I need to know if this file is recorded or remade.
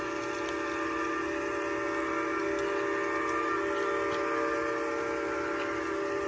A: recorded